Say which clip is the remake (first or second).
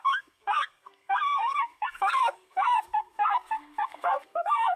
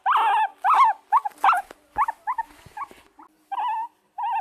first